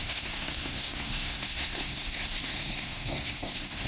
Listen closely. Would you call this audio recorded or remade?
remade